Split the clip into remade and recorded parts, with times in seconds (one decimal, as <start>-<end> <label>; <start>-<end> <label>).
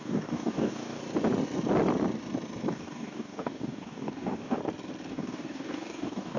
0.0-1.0 remade; 1.0-2.7 recorded; 2.7-4.6 remade; 4.6-5.1 recorded; 5.1-6.4 remade